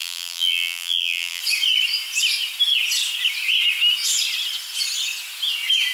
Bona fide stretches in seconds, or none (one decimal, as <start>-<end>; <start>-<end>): 1.4-5.9